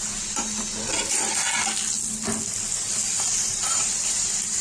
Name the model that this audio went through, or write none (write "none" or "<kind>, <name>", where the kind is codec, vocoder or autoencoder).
none